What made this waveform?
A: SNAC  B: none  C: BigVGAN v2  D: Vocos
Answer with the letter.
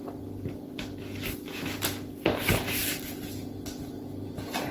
B